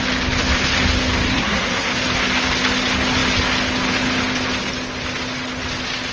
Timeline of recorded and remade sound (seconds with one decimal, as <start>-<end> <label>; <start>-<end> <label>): 0.0-1.3 recorded; 1.3-1.9 remade; 1.9-6.1 recorded